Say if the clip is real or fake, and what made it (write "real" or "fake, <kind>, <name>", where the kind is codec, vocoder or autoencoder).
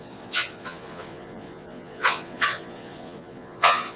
fake, vocoder, Vocos